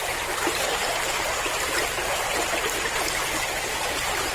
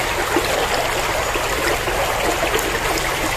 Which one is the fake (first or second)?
first